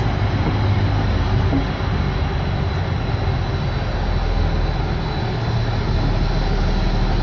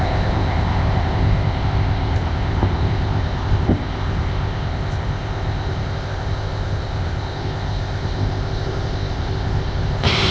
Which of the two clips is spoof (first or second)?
second